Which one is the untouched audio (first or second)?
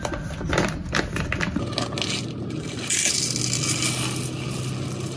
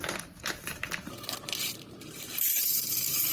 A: first